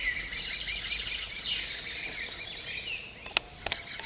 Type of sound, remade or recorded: recorded